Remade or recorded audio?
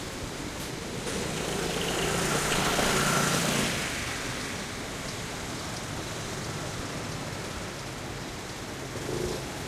recorded